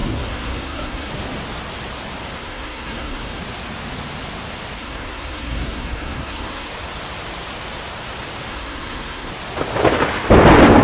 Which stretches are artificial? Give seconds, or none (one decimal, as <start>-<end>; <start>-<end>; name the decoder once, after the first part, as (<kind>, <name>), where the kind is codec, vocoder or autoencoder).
0.0-1.1 (codec, SNAC); 2.4-3.4; 4.8-6.7; 8.5-9.3